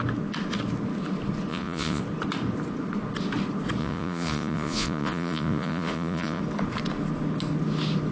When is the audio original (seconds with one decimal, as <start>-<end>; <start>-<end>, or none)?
0.0-1.5; 2.0-3.8; 6.4-8.1